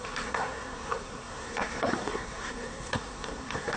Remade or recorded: remade